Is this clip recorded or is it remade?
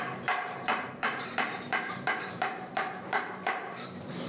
remade